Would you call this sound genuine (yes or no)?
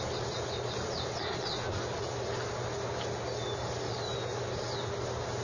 yes